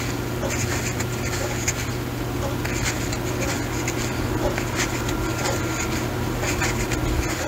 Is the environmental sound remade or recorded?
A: recorded